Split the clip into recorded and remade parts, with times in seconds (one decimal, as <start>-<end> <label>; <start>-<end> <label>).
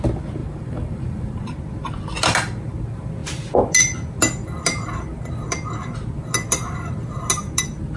0.0-0.4 recorded; 0.4-1.4 remade; 1.4-8.0 recorded